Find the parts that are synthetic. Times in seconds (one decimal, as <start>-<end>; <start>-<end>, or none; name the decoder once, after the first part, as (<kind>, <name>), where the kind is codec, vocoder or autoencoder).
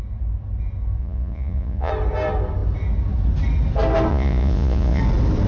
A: 1.0-1.9 (vocoder, Vocos); 4.1-5.0